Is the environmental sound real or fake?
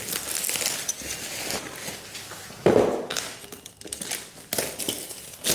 real